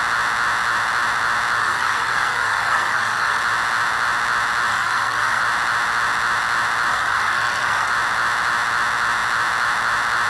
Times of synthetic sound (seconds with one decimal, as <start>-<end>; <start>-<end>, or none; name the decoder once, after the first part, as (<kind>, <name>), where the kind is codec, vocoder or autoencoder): 1.6-3.4 (codec, SNAC); 4.7-5.4; 6.9-7.9